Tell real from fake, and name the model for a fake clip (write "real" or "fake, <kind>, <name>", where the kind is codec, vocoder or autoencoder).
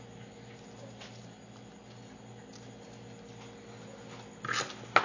real